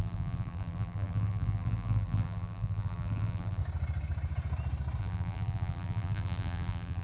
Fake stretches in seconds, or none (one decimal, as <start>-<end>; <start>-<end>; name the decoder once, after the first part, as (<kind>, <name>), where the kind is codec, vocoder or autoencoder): 0.0-3.6 (vocoder, BigVGAN v2); 5.0-7.0

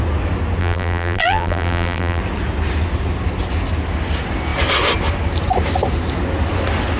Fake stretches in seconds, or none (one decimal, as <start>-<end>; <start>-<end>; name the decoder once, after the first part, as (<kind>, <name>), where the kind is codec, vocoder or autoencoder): 0.6-2.2 (vocoder, BigVGAN v2)

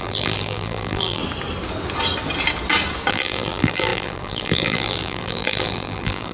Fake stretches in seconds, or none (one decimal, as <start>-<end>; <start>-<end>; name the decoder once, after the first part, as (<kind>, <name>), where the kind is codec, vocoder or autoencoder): 0.0-1.2 (vocoder, BigVGAN v2); 3.1-6.3

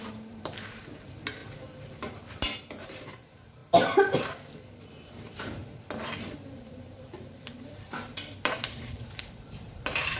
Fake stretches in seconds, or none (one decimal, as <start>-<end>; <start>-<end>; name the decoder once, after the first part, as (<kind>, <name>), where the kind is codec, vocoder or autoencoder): 0.0-3.6 (vocoder, BigVGAN v2); 4.9-5.6; 6.6-10.2

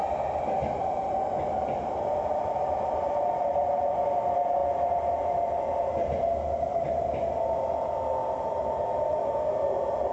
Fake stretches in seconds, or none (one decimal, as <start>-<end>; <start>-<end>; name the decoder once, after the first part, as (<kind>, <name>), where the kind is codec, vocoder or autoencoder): 2.3-3.7 (vocoder, BigVGAN v2); 8.2-9.2

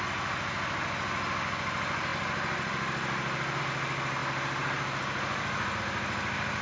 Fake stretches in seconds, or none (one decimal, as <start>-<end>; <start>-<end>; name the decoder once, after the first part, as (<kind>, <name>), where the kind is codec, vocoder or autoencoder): 2.1-3.6 (vocoder, BigVGAN v2); 4.2-5.8